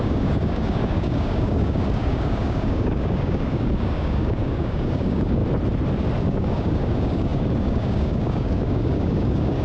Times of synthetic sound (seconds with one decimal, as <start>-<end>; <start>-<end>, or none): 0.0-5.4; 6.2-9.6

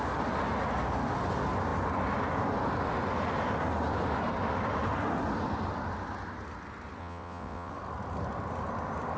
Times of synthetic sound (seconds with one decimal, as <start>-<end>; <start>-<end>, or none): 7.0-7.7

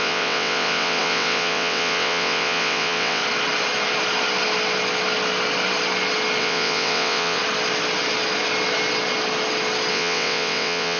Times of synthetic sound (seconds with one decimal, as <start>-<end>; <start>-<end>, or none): 0.0-3.2; 6.4-7.4; 9.9-11.0

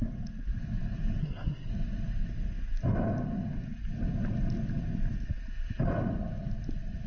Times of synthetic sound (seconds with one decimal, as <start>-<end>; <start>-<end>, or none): 1.2-1.7

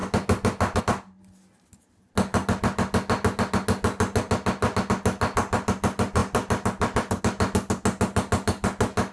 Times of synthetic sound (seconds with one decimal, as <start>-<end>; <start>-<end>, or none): none

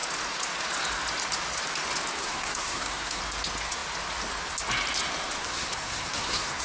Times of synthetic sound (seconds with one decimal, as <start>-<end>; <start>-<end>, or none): 2.2-3.2; 5.4-6.6

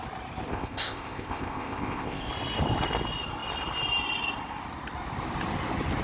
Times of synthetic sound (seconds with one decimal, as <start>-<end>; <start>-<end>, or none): 0.5-2.3